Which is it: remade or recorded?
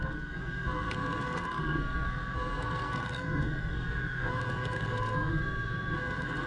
remade